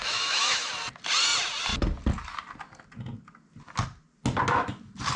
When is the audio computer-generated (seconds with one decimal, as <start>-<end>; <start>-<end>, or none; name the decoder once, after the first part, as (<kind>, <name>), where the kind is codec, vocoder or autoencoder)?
0.0-0.7 (autoencoder, DAC-VAE)